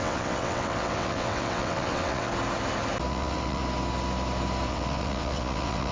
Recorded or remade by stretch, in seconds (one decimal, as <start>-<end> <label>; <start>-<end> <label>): 0.0-2.3 remade; 2.3-3.1 recorded; 3.1-3.6 remade; 3.6-4.7 recorded; 4.7-5.9 remade